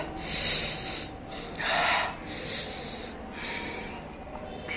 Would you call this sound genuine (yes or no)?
yes